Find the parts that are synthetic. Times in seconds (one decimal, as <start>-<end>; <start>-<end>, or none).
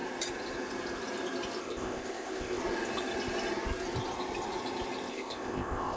1.6-2.6; 5.1-6.0